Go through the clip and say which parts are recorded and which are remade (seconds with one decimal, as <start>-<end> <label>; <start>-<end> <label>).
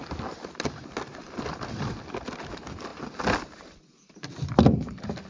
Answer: 0.0-2.9 recorded; 2.9-3.8 remade; 3.8-5.3 recorded